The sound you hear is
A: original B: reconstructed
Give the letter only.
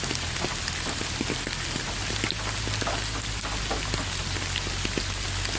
A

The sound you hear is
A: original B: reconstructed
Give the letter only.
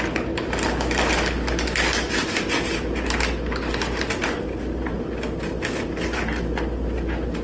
A